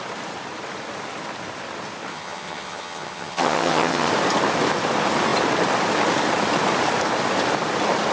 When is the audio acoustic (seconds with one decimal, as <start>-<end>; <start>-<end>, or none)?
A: 0.0-2.1; 4.1-8.1